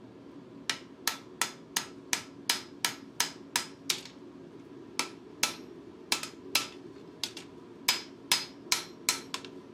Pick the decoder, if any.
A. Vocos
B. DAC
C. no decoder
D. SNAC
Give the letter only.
C